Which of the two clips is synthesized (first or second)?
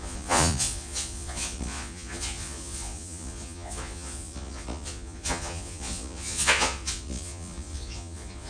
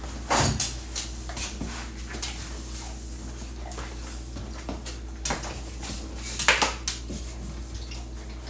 first